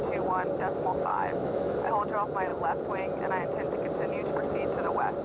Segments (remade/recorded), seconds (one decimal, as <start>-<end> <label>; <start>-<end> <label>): 0.0-1.1 recorded; 1.1-1.9 remade; 1.9-5.2 recorded